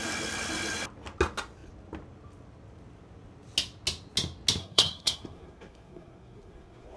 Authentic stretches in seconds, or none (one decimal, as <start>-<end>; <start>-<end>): 0.0-4.6